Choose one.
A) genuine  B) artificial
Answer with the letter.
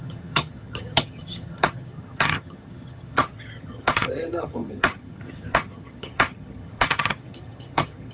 B